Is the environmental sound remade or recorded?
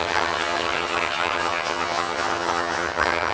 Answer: remade